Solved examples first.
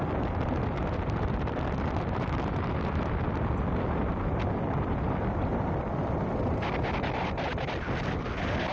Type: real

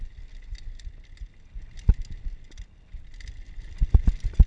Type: real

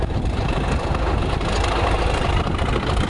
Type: real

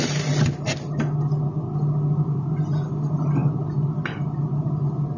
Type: real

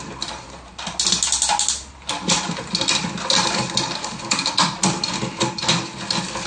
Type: real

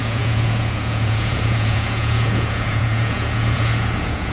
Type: fake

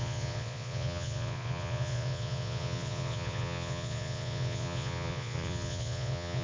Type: fake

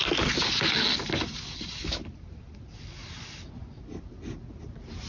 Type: real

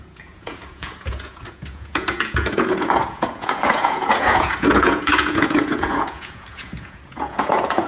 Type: fake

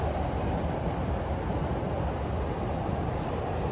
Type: real